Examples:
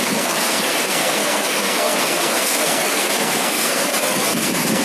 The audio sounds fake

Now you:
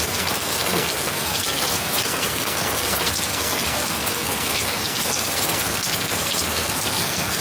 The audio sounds fake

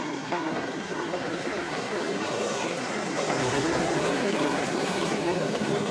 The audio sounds fake